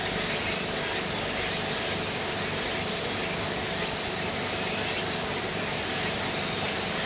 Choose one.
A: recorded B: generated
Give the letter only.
A